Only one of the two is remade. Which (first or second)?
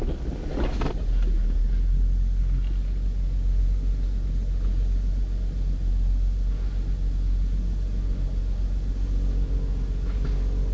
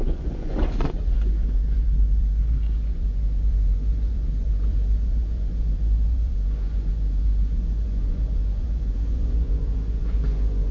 second